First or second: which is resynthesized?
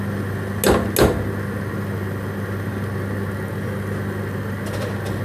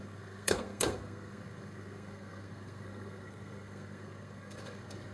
second